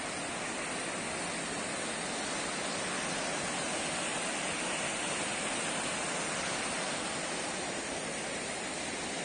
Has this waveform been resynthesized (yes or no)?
no